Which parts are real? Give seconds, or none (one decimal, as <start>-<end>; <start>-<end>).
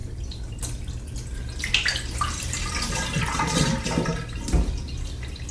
0.0-5.5